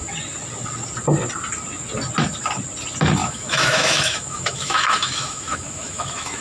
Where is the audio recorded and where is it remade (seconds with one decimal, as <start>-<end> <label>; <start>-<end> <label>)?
0.0-3.2 recorded; 3.2-6.4 remade